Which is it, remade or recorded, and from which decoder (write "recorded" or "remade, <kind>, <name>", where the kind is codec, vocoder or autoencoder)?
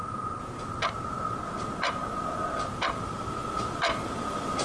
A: recorded